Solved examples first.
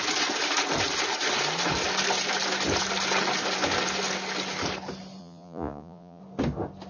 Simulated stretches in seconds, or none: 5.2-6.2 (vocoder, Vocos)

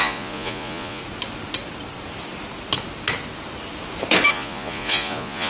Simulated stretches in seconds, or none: 0.0-1.0 (vocoder, Vocos); 4.3-5.5

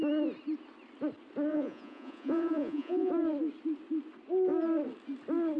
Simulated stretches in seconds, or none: 1.5-3.1 (vocoder, Vocos)

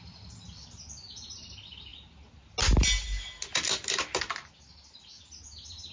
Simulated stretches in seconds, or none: none

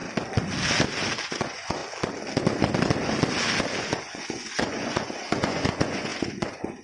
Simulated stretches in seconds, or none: 1.2-1.8 (vocoder, Vocos); 3.8-6.8